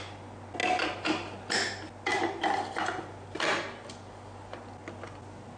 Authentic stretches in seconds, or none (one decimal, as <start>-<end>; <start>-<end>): 0.0-5.6